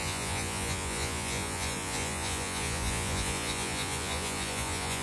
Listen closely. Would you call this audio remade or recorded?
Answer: remade